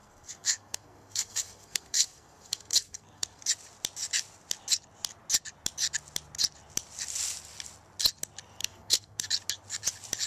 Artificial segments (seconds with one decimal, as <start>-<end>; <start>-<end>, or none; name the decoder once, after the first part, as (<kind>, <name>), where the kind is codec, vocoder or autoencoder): 0.0-3.4 (codec, SNAC); 8.6-9.3